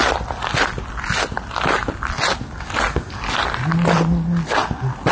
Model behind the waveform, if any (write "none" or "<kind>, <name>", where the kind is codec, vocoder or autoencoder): none